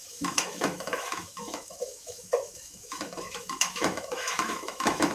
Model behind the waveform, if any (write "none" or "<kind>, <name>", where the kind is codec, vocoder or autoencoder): autoencoder, DAC-VAE